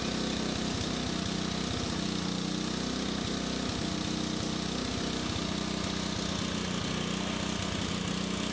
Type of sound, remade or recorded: recorded